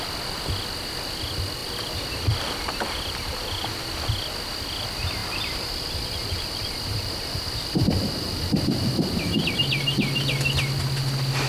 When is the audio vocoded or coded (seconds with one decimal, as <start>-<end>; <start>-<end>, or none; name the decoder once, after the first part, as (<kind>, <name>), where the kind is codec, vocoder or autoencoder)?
5.2-9.5 (vocoder, BigVGAN v2)